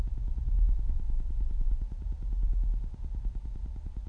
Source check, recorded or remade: recorded